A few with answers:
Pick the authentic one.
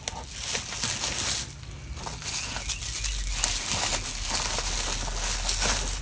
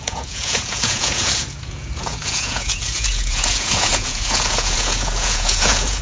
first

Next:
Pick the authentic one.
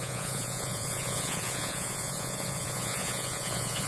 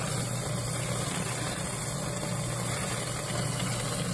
second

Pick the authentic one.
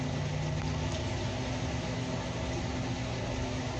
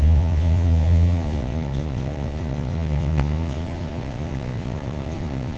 first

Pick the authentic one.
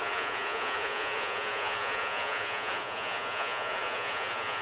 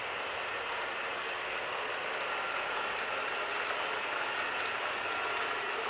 second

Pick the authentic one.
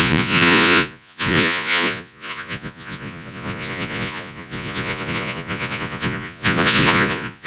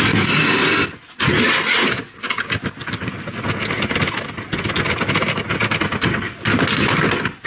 second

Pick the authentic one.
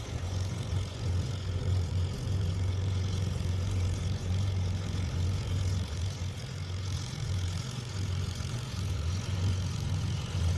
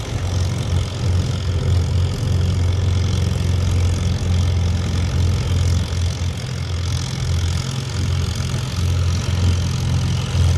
second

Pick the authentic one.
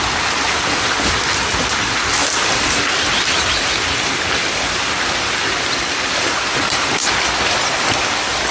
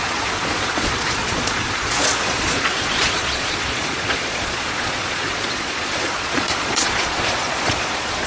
first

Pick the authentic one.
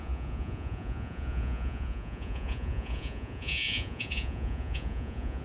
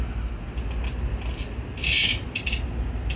second